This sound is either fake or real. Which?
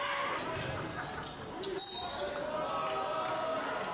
real